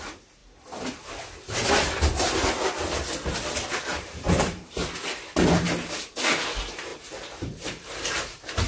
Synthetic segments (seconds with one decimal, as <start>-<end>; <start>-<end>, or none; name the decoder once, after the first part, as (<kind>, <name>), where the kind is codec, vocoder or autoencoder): 3.9-4.7 (vocoder, BigVGAN v2); 6.9-8.7